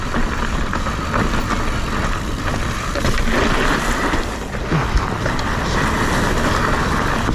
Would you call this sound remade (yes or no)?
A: no